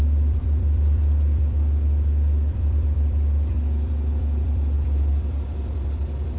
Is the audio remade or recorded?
remade